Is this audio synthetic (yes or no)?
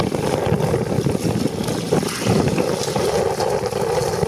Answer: no